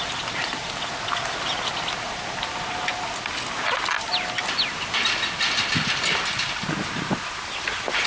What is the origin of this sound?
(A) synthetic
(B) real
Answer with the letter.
B